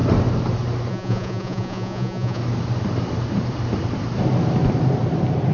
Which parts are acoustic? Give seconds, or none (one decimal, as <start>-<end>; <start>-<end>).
0.0-0.9; 2.4-5.5